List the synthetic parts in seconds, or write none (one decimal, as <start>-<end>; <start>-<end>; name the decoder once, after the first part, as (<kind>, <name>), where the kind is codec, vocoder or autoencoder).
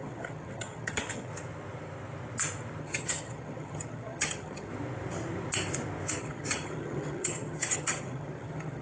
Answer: 0.0-1.3 (vocoder, HiFi-GAN); 2.8-4.7; 6.2-8.8